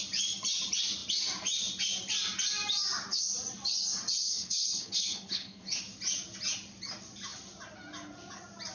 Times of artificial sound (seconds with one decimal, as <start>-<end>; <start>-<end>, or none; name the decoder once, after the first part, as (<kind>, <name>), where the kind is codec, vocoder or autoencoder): 4.2-5.8 (codec, HILCodec)